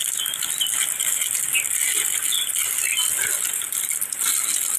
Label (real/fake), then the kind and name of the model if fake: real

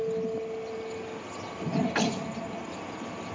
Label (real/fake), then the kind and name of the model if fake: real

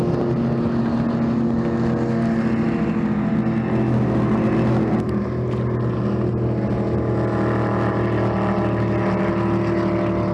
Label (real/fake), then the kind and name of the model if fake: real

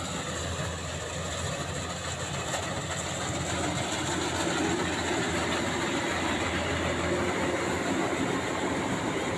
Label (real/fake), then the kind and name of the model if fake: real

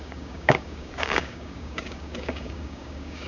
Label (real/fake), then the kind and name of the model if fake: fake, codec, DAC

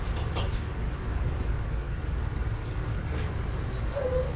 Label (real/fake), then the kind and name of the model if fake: fake, codec, DAC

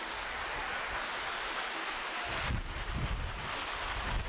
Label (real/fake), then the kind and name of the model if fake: real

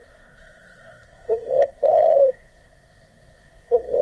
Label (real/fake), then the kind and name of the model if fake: fake, codec, SNAC